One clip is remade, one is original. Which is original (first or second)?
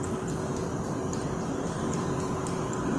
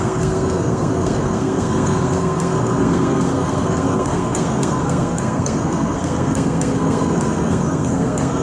first